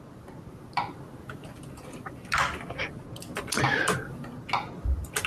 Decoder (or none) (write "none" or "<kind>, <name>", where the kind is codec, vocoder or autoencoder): none